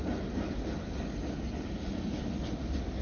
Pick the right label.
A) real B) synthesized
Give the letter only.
A